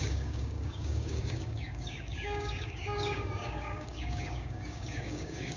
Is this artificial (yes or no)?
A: yes